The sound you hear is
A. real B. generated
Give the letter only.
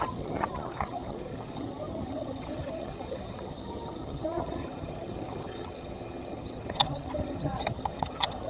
B